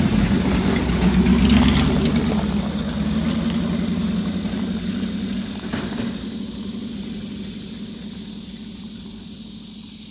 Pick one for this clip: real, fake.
real